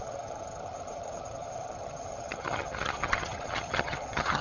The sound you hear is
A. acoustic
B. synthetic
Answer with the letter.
B